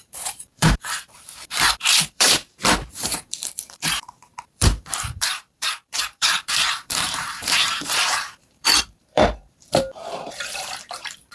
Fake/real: fake